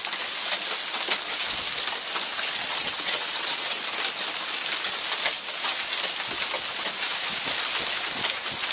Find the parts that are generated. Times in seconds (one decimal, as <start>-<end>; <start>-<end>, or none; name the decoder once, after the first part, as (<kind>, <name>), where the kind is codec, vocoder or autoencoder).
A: 2.3-3.8 (vocoder, WaveNeXt)